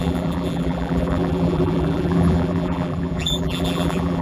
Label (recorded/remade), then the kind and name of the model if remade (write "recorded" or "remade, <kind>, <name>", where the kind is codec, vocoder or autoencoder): remade, vocoder, BigVGAN v2